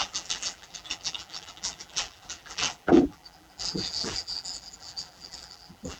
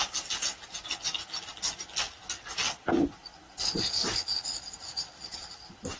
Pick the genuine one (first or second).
second